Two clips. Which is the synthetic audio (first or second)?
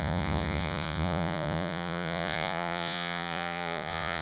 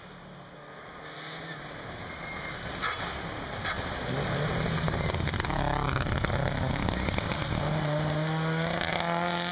first